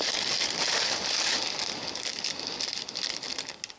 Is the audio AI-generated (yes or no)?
no